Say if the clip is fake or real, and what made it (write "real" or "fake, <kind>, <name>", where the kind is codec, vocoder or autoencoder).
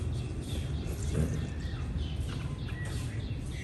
real